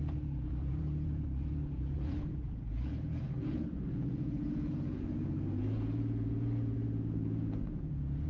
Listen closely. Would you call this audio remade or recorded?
remade